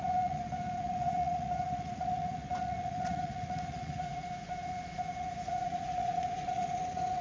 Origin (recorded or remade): remade